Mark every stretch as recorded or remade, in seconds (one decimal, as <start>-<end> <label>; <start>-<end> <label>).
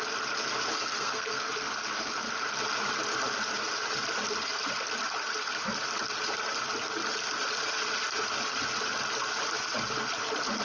0.0-0.8 recorded; 0.8-1.5 remade; 1.5-10.6 recorded